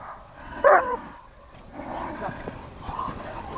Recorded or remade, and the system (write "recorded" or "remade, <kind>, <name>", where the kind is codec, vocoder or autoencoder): remade, vocoder, WaveNeXt